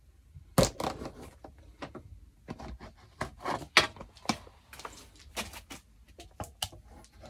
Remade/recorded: recorded